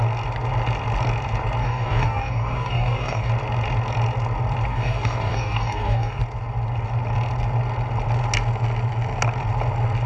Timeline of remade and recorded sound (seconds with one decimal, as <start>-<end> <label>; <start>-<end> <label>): 0.0-1.6 recorded; 1.6-3.3 remade; 3.3-4.7 recorded; 4.7-6.2 remade; 6.2-10.1 recorded